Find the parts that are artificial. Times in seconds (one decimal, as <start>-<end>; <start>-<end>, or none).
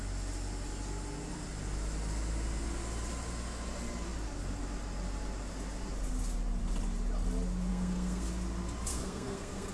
7.7-8.3; 8.9-9.7